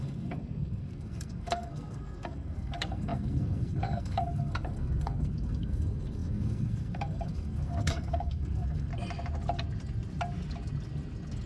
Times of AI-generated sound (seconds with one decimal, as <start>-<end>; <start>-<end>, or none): 0.0-8.9